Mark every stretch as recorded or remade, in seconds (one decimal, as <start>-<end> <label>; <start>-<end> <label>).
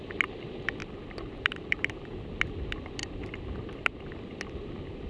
0.0-0.8 recorded; 0.8-2.3 remade; 2.3-3.0 recorded; 3.0-4.0 remade; 4.0-5.1 recorded